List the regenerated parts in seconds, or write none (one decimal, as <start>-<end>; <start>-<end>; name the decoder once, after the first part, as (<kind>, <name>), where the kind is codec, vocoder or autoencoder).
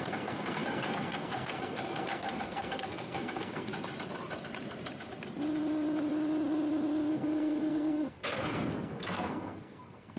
0.0-3.7 (codec, SNAC); 7.1-10.2